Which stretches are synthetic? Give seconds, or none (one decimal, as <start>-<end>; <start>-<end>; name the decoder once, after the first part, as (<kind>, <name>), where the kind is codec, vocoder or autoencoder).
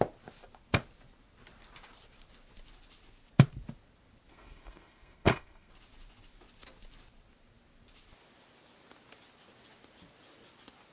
4.3-5.7 (codec, SNAC)